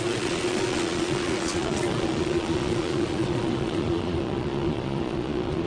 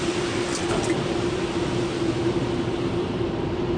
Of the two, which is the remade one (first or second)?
first